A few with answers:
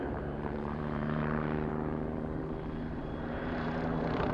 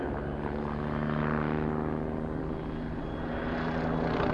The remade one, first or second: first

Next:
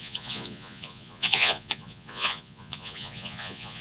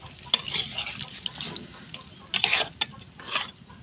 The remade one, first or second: first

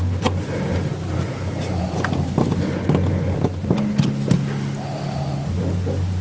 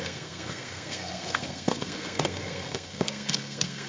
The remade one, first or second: second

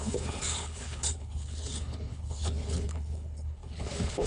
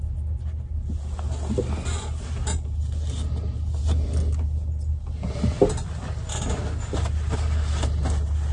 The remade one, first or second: first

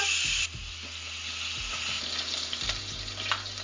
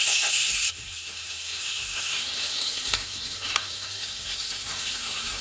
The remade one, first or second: second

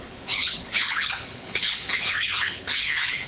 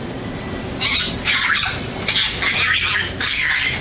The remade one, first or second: first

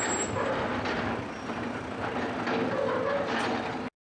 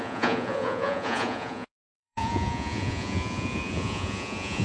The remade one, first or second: second